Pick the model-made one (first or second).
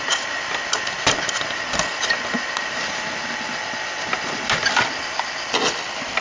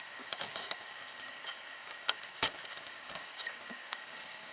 second